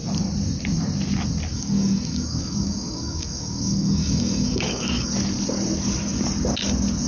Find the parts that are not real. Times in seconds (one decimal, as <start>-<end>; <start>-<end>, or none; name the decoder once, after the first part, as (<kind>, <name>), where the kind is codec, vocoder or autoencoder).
1.5-5.1 (codec, DAC)